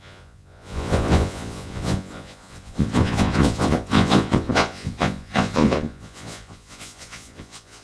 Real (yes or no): no